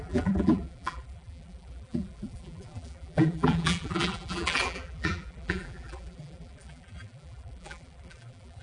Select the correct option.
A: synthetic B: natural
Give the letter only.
A